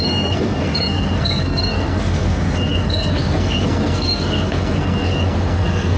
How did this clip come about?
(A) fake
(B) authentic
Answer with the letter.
A